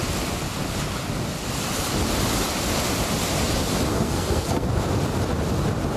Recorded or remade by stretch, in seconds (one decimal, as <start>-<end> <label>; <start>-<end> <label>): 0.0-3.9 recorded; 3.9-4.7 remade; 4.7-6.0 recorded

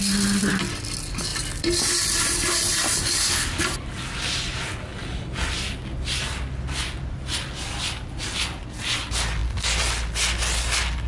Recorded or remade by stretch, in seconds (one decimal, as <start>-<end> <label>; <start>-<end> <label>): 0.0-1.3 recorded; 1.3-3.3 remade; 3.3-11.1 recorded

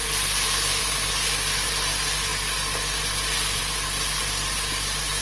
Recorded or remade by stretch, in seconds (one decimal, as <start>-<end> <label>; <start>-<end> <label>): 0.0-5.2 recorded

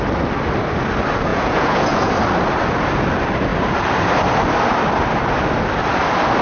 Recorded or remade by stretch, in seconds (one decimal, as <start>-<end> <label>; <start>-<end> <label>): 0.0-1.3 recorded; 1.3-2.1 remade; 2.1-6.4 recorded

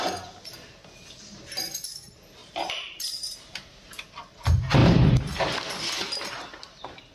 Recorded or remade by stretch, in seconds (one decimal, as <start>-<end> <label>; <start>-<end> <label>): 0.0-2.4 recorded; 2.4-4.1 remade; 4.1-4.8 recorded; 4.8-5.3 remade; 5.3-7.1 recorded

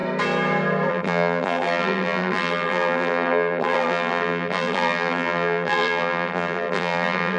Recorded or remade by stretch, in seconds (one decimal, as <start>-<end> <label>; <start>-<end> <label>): 0.0-0.9 recorded; 0.9-7.4 remade